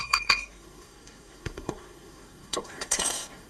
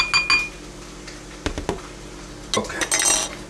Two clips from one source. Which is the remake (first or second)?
first